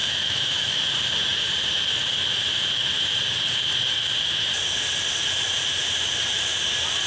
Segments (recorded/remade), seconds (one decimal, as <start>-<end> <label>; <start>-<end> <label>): 0.0-0.8 remade; 0.8-7.1 recorded